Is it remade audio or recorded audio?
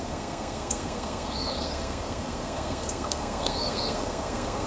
remade